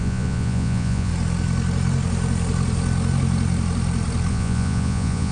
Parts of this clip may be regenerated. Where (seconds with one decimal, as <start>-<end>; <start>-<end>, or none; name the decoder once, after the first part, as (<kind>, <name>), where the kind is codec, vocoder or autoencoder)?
0.0-1.1 (vocoder, Vocos); 4.3-5.3